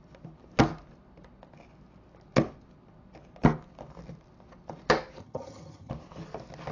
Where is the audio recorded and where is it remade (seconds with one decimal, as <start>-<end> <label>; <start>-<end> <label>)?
0.0-5.2 recorded; 5.2-5.9 remade; 5.9-6.7 recorded